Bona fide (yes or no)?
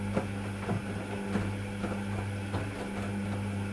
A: yes